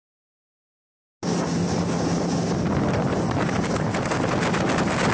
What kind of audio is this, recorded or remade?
recorded